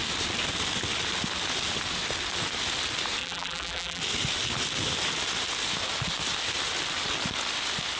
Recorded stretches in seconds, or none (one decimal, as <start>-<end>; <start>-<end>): 0.0-3.2; 4.0-8.0

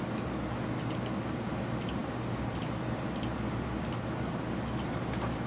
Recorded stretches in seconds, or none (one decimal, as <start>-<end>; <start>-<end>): 0.0-5.5

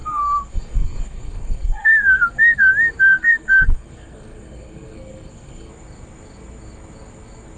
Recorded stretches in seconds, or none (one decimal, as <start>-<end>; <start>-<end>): 2.7-3.1; 5.7-7.6

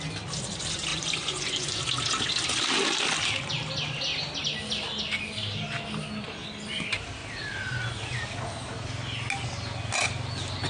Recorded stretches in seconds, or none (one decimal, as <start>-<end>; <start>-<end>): 0.0-0.9; 1.8-10.7

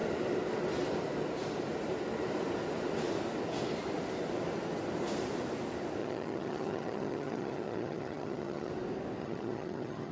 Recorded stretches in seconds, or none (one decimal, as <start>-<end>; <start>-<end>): 0.0-6.0; 8.7-9.2